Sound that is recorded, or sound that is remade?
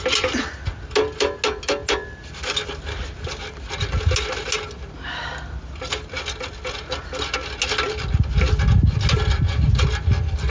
recorded